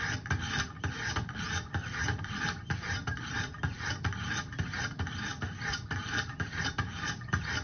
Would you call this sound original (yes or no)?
no